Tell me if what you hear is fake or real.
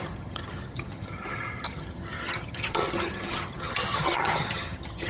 fake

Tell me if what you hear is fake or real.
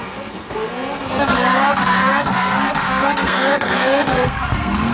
fake